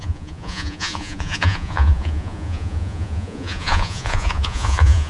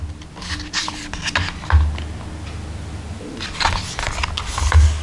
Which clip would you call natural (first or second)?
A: second